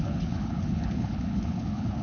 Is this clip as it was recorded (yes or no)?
no